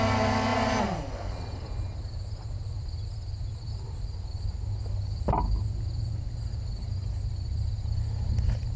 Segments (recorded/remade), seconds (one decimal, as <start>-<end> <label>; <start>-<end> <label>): 0.0-8.8 recorded